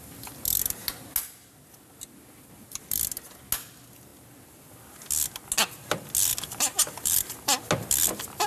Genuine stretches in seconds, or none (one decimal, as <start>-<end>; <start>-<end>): 0.0-6.3; 7.3-8.5